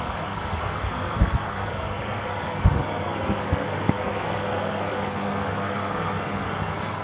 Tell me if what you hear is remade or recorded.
remade